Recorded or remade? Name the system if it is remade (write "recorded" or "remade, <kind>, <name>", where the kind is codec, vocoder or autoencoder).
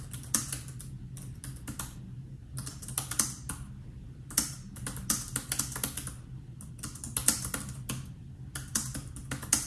recorded